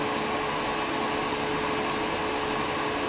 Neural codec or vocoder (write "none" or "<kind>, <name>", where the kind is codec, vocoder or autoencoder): none